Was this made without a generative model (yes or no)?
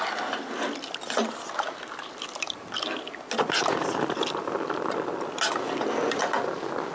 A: yes